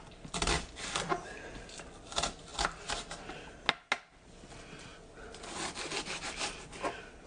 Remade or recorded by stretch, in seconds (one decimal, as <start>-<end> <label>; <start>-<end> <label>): 0.0-7.3 recorded